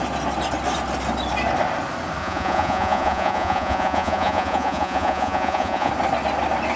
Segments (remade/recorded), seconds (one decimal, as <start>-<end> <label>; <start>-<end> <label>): 0.0-2.2 recorded; 2.2-5.9 remade; 5.9-6.8 recorded